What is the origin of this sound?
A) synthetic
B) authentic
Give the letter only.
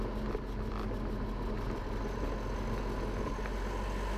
B